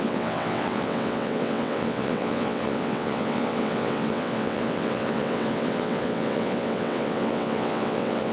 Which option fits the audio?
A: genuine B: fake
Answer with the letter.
B